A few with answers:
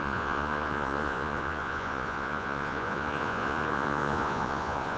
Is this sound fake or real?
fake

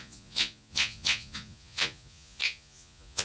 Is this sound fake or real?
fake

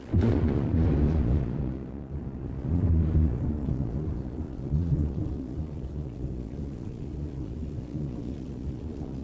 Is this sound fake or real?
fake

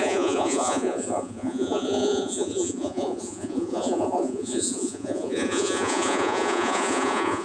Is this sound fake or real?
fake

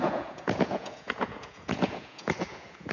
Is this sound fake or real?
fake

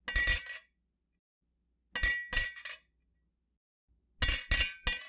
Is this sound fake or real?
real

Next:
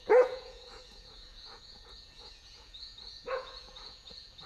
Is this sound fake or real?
fake